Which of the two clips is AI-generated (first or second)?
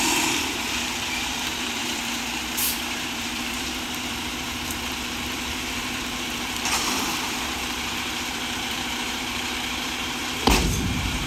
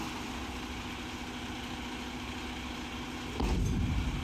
first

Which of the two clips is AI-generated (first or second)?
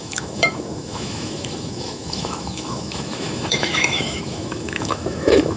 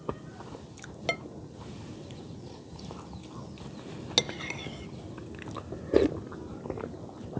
first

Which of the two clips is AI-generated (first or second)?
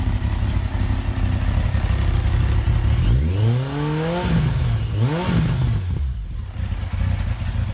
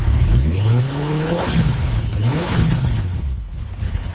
second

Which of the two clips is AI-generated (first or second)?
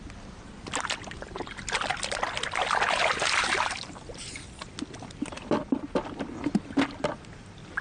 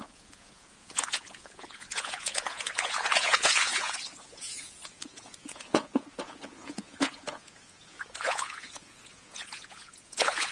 second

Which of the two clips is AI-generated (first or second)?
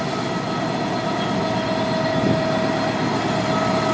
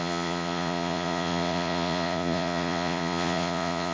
second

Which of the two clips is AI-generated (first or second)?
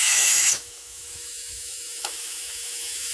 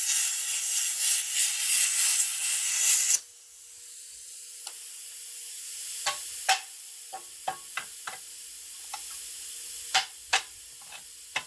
first